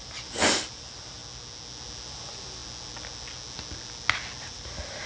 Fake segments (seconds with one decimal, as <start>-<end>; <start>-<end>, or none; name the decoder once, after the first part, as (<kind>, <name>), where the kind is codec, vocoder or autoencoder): 0.0-1.2 (vocoder, BigVGAN v2); 2.1-2.6; 4.4-5.1